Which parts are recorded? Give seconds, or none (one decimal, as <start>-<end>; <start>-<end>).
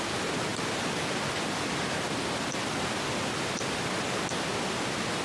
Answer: 0.0-5.2